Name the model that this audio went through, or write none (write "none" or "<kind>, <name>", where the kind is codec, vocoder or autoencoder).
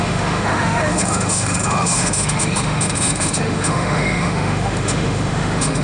autoencoder, DAC-VAE